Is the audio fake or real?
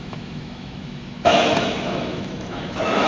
fake